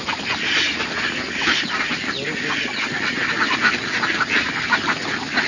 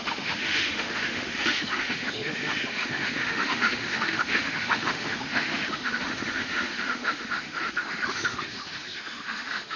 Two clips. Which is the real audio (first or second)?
first